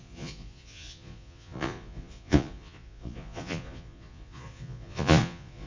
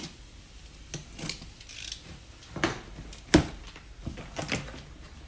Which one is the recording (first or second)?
second